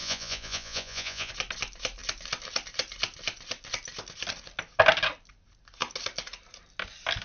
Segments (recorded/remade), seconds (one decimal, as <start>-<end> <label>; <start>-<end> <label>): 0.0-1.3 remade; 1.3-7.2 recorded